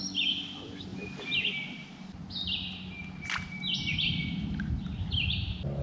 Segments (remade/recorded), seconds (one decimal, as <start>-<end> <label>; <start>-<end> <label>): 0.0-5.8 recorded